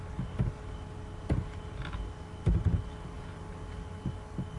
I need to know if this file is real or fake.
real